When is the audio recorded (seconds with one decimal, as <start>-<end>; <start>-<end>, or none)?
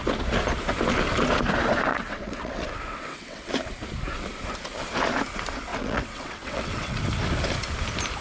0.0-1.9; 3.5-5.7; 7.0-8.2